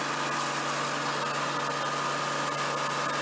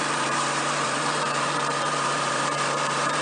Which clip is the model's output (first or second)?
second